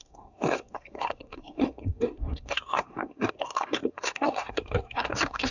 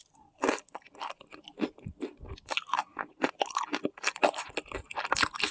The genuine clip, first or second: second